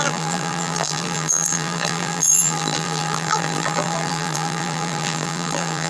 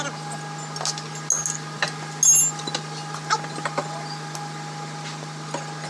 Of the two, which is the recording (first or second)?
second